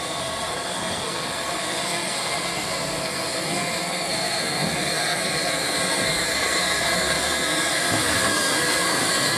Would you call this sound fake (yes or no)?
yes